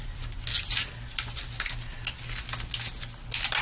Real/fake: real